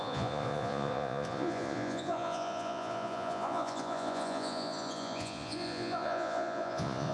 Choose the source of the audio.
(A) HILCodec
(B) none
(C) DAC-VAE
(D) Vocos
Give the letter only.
D